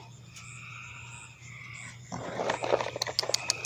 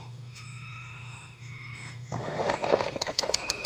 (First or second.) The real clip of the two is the first